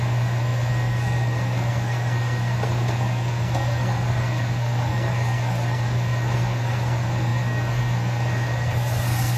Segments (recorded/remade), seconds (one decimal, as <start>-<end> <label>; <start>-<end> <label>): 0.0-9.4 remade